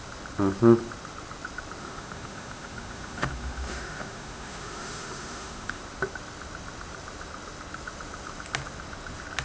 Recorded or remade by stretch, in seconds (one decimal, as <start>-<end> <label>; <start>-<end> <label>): 0.0-1.8 recorded; 1.8-5.8 remade; 5.8-9.4 recorded